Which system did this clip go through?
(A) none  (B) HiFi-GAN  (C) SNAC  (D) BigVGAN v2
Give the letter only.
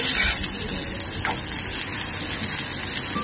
A